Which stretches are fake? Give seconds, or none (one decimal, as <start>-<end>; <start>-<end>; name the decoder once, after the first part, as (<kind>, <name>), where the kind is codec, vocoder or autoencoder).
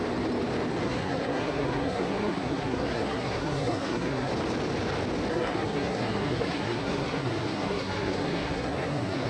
0.8-4.3 (codec, SNAC); 5.3-9.3